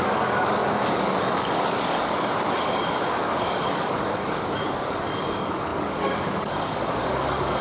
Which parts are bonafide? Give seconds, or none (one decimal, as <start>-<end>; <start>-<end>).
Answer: none

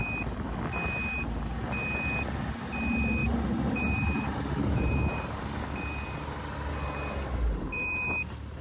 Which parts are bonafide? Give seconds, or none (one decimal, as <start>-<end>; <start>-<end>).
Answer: 0.0-3.2; 5.8-8.6

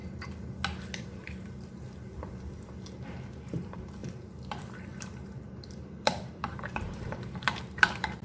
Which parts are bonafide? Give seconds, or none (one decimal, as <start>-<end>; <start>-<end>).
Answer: 0.0-3.3; 4.0-4.5

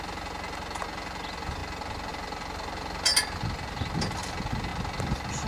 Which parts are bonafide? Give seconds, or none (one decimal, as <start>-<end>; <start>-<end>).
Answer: 0.0-5.5

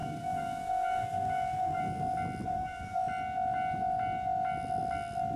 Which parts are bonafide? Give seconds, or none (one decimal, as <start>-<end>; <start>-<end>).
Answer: 1.8-2.5; 3.0-5.4